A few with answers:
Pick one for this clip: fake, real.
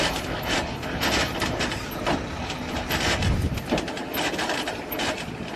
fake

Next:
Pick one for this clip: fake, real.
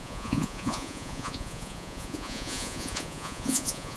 fake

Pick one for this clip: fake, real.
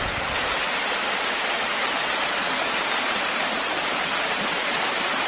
fake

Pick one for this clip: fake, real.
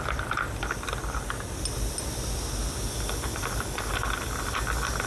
real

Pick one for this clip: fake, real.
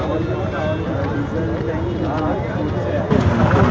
real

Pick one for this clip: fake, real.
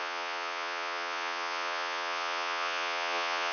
fake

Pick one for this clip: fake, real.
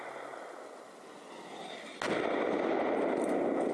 real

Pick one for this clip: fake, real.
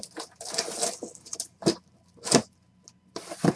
real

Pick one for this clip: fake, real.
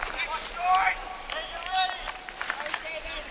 fake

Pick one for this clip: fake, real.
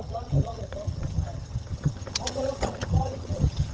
fake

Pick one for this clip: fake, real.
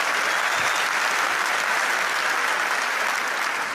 real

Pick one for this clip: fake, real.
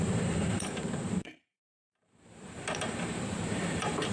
fake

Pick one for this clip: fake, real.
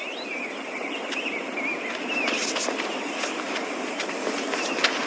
real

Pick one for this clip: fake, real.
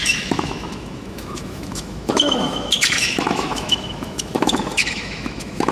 fake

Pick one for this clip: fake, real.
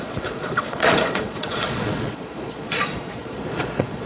fake